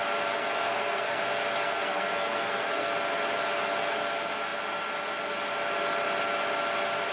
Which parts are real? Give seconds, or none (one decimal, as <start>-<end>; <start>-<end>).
0.0-0.4; 1.2-1.6; 2.9-7.1